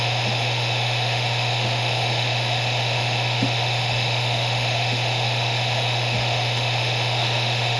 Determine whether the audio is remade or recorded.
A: remade